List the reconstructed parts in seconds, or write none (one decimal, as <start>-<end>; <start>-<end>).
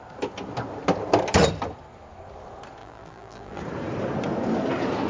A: 2.8-3.6